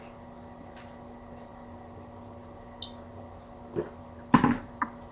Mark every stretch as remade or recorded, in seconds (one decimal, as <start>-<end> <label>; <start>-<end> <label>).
0.0-5.1 recorded

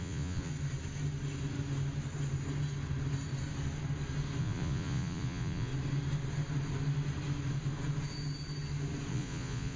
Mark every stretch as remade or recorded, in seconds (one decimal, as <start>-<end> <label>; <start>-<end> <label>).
0.0-0.5 remade; 0.5-4.4 recorded; 4.4-5.7 remade; 5.7-9.1 recorded; 9.1-9.8 remade